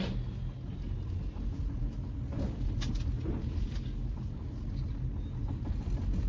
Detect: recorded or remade recorded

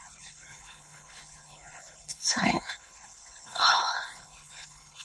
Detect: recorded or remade remade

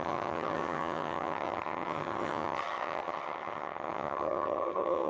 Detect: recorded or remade remade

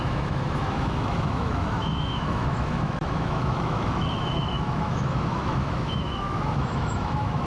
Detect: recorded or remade remade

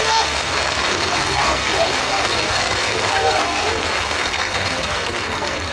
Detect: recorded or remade remade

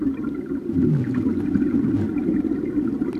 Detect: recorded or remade recorded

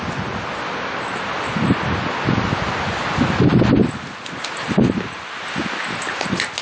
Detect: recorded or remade recorded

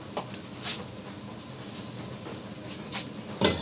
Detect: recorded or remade recorded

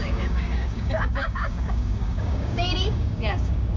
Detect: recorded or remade remade